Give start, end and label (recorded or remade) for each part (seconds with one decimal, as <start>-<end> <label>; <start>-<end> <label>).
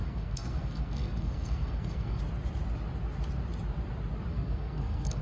0.0-2.2 remade; 2.2-4.3 recorded; 4.3-5.2 remade